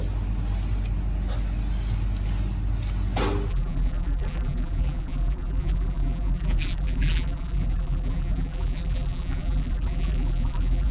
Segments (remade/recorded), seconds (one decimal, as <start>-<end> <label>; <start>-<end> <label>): 0.0-3.5 recorded; 3.5-10.9 remade